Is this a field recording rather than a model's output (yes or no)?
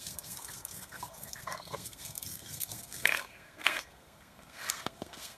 no